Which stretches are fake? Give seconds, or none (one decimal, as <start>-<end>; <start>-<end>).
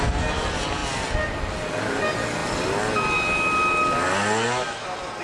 none